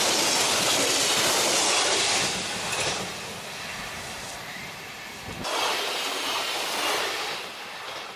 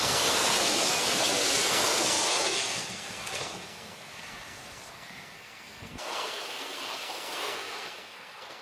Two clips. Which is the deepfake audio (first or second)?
second